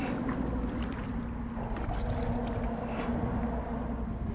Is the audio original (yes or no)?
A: yes